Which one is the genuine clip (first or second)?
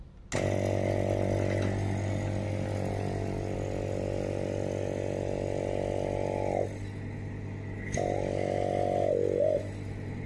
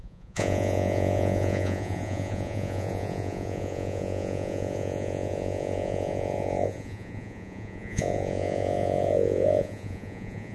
first